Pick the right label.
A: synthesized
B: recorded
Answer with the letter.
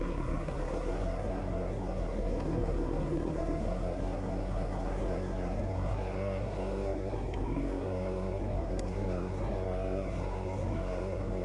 A